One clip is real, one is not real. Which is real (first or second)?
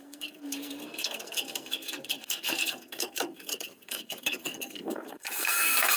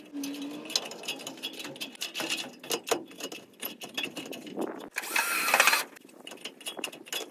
second